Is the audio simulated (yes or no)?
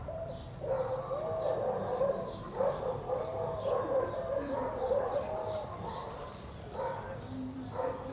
no